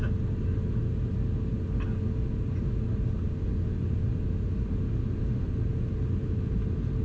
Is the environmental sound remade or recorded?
recorded